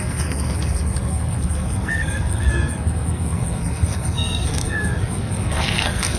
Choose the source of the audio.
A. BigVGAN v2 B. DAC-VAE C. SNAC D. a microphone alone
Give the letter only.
C